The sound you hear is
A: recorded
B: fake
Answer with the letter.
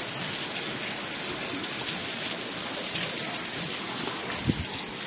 A